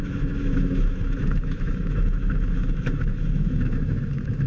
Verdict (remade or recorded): remade